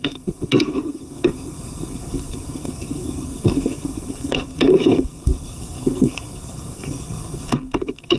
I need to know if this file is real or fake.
fake